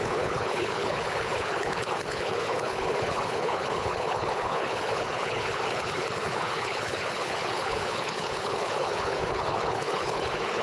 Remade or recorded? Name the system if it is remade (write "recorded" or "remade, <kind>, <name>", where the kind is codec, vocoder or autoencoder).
remade, codec, HILCodec